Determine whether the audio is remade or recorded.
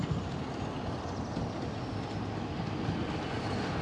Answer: recorded